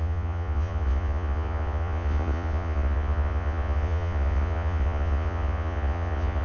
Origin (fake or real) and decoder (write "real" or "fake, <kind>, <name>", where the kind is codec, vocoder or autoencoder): fake, vocoder, Vocos